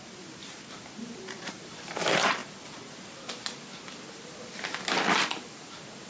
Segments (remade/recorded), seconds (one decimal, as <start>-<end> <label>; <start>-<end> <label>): 0.0-2.4 remade; 2.4-6.1 recorded